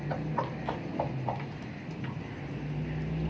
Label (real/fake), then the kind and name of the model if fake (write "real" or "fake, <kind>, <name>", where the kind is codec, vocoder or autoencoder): real